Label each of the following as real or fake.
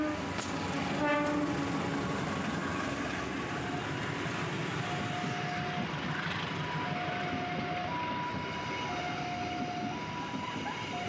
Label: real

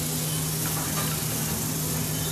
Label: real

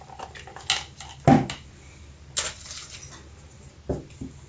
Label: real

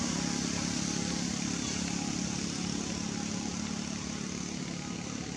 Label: real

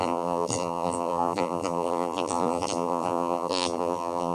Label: fake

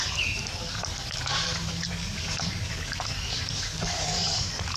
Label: fake